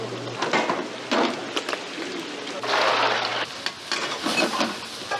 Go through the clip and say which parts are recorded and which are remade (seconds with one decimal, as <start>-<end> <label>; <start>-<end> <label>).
0.0-5.2 recorded